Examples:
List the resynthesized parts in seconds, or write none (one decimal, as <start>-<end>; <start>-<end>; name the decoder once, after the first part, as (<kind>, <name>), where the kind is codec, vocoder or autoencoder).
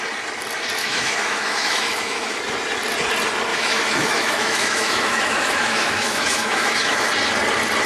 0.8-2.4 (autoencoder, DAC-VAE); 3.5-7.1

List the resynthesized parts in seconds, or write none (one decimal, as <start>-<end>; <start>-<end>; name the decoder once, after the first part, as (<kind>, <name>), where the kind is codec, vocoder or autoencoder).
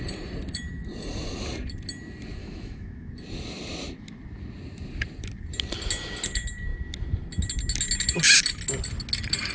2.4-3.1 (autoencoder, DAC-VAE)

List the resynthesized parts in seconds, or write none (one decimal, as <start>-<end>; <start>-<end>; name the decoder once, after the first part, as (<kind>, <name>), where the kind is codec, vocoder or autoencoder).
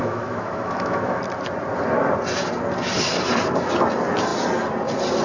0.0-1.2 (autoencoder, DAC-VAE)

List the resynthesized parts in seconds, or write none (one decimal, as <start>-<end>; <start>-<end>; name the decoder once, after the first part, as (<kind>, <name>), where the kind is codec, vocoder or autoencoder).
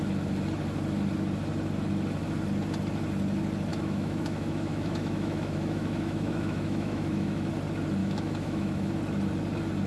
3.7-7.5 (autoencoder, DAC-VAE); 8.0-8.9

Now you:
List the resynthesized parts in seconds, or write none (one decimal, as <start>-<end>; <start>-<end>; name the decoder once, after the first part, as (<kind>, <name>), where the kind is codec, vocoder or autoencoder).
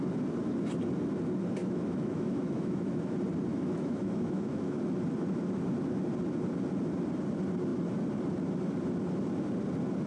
1.6-3.0 (autoencoder, DAC-VAE); 3.5-4.8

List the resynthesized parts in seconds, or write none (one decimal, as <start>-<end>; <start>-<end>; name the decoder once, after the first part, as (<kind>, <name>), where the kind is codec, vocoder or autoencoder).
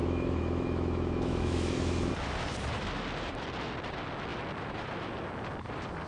0.0-2.1 (autoencoder, DAC-VAE)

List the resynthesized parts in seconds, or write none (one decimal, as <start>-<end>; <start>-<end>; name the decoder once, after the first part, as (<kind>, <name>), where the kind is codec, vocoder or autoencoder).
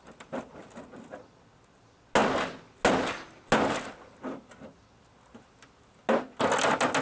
none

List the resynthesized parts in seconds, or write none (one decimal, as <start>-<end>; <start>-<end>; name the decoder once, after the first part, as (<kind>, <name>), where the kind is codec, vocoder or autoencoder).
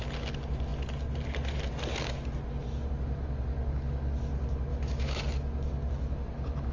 4.7-5.2 (autoencoder, DAC-VAE)